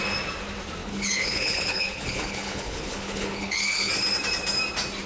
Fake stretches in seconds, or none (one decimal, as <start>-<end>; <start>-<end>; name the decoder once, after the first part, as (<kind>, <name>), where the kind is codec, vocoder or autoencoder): 0.8-3.9 (codec, HILCodec)